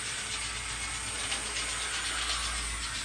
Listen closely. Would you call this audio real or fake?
real